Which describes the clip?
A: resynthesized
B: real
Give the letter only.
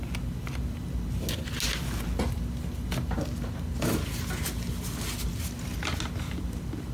B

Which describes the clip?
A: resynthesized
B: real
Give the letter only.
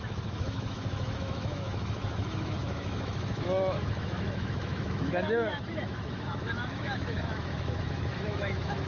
A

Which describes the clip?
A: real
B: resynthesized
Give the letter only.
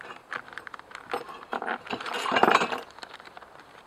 A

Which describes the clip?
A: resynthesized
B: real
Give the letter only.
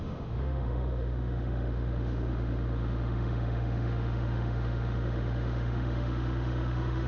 A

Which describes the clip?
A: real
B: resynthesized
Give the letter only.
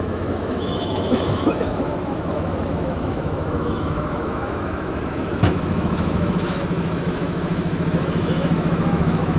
B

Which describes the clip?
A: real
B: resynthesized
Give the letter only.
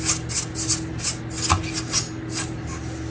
A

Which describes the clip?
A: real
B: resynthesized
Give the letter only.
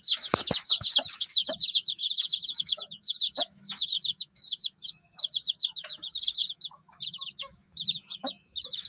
B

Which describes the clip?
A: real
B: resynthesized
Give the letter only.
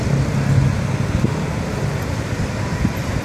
A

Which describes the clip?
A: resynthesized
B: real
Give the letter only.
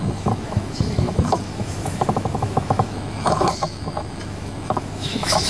A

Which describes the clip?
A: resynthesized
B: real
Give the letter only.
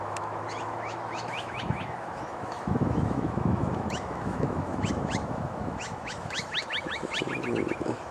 A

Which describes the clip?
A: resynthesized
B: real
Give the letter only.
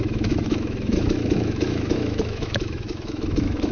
A